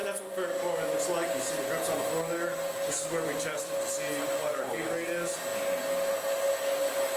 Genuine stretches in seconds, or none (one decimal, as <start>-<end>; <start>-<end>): 0.0-7.2